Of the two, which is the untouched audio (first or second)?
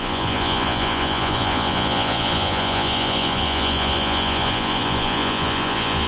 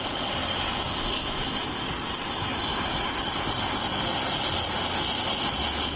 second